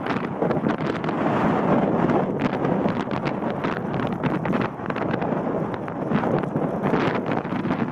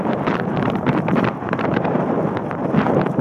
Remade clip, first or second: second